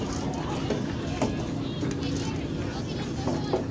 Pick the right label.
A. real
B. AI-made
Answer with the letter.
A